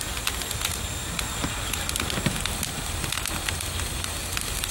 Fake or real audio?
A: real